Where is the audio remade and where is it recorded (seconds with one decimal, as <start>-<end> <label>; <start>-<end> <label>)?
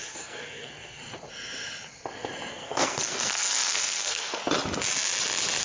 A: 0.0-1.0 remade; 1.0-2.5 recorded; 2.5-4.4 remade; 4.4-5.6 recorded